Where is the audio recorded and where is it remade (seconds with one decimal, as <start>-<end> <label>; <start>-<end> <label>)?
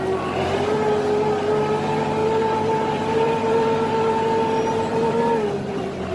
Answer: 0.0-2.2 recorded; 2.2-4.1 remade; 4.1-4.9 recorded; 4.9-6.1 remade